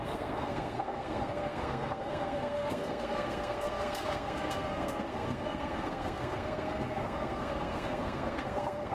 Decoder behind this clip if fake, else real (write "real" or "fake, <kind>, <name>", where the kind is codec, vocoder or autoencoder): fake, codec, SNAC